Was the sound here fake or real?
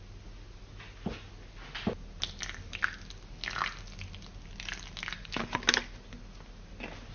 real